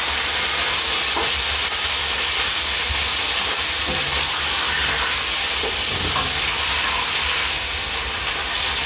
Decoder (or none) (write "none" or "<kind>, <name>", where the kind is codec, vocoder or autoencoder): none